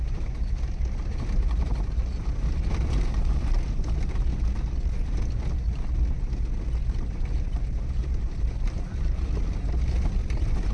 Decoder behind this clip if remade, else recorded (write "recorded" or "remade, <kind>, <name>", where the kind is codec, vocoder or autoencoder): recorded